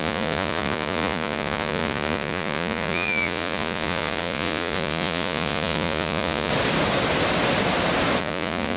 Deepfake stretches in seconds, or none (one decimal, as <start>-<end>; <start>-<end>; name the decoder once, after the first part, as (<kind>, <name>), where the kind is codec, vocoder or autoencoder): 0.0-6.5 (vocoder, Vocos); 8.2-8.8